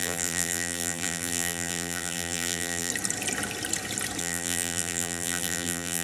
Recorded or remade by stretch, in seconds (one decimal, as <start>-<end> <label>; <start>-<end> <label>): 0.0-2.9 remade; 2.9-4.2 recorded; 4.2-6.0 remade